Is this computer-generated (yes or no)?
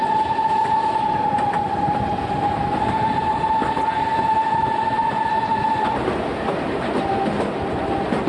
no